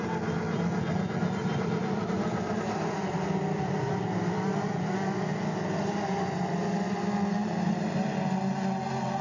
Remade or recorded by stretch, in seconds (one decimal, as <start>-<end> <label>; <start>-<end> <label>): 0.0-1.4 recorded; 1.4-5.3 remade; 5.3-7.4 recorded; 7.4-8.1 remade; 8.1-9.2 recorded